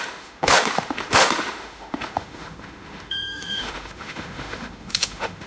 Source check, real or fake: fake